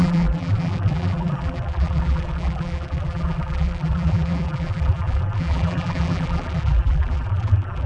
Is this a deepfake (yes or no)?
yes